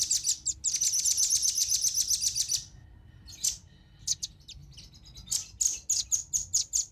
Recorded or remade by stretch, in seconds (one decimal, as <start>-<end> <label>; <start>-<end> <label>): 0.0-6.9 recorded